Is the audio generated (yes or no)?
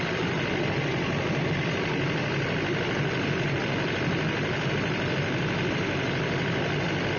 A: no